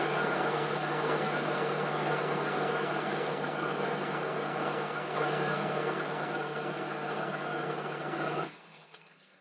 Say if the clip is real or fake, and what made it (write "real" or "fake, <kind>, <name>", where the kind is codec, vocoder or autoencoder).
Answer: fake, codec, SNAC